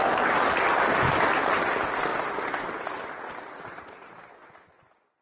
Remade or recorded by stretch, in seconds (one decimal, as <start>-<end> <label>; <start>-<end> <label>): 0.0-5.2 recorded